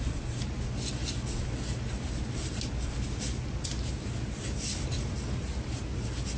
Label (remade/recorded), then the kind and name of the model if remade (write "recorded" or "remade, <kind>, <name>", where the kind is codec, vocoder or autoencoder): recorded